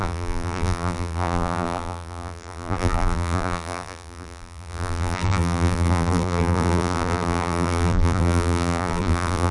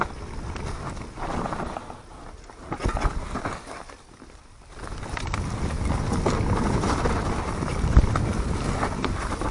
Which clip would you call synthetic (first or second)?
first